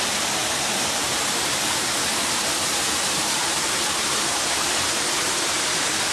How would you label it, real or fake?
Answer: fake